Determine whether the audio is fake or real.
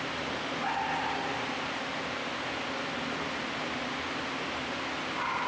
real